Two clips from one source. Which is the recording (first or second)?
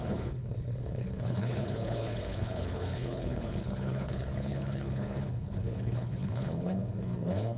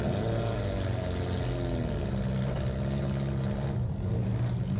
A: second